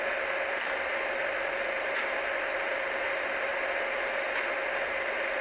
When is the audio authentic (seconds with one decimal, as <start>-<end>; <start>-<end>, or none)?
0.0-5.4